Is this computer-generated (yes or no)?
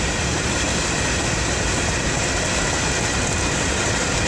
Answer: no